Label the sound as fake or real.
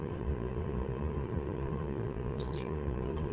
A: fake